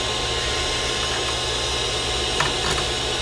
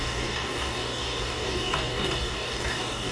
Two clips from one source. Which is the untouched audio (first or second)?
first